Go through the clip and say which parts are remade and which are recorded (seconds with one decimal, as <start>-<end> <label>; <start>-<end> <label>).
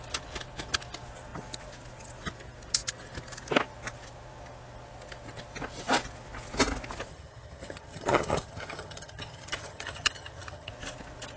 0.0-7.1 recorded; 7.1-10.7 remade; 10.7-11.4 recorded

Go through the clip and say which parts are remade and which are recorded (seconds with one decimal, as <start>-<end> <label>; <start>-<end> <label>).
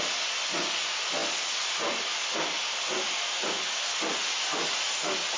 0.0-5.4 recorded